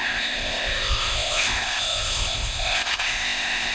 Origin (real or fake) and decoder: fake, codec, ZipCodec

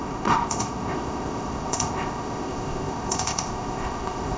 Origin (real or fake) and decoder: fake, codec, ZipCodec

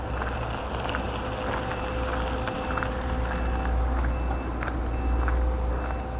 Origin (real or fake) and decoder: real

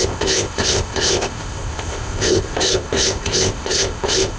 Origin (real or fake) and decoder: fake, codec, ZipCodec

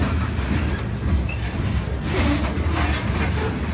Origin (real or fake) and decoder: real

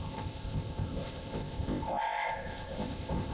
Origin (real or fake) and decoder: fake, codec, ZipCodec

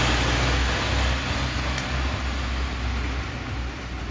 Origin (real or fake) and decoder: real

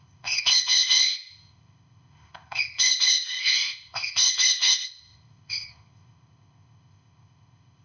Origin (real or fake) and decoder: fake, codec, ZipCodec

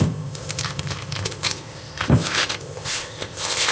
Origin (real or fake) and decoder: fake, codec, ZipCodec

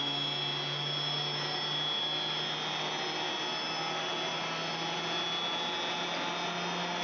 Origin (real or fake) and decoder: real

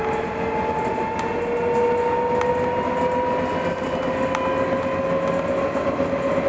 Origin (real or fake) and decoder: real